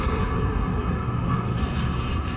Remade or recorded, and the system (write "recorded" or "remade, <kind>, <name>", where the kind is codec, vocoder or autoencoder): remade, codec, SNAC